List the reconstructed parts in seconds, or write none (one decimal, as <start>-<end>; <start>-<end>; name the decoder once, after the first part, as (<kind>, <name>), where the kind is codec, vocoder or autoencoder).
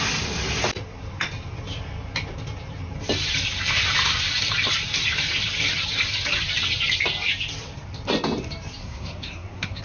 8.8-9.8 (codec, SNAC)